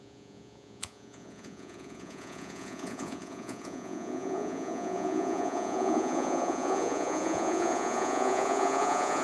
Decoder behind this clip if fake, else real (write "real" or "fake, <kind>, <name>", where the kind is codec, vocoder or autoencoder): fake, vocoder, Vocos